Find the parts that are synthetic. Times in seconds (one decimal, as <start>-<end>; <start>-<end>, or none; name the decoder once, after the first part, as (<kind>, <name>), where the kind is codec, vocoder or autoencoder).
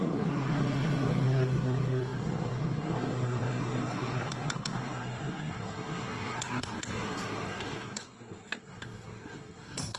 0.0-10.0 (codec, SNAC)